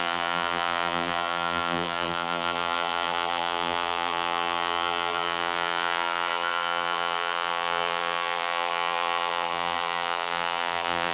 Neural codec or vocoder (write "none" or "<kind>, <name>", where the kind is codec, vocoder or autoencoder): vocoder, BigVGAN v2